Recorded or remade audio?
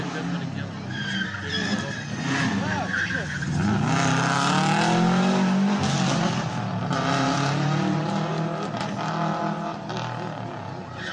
recorded